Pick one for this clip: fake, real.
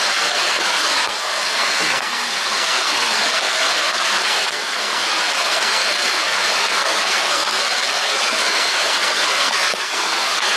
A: fake